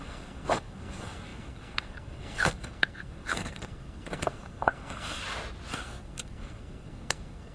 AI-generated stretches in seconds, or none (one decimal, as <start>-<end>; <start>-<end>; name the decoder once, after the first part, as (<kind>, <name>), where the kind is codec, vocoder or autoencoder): 0.0-5.2 (codec, SNAC); 5.7-7.5